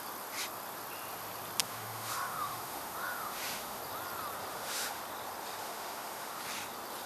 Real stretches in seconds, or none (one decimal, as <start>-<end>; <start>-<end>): 0.0-1.6; 3.8-4.5; 5.0-5.6; 6.4-7.1